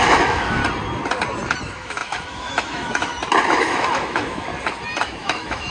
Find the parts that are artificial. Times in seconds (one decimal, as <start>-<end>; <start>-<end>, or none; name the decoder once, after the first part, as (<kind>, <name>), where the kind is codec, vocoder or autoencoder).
0.0-0.6 (autoencoder, DAC-VAE); 1.6-3.1; 3.6-4.5; 5.0-5.7